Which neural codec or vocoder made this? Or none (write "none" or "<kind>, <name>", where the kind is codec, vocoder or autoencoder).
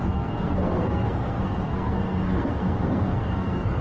codec, SNAC